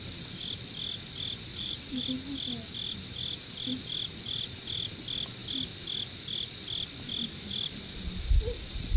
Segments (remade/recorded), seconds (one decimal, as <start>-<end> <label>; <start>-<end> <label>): 0.0-1.5 recorded; 1.5-2.0 remade; 2.0-9.0 recorded